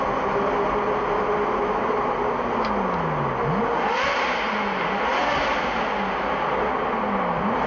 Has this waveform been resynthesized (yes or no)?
no